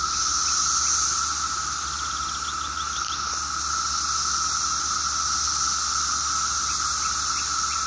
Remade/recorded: recorded